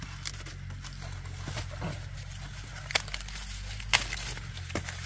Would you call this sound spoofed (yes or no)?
no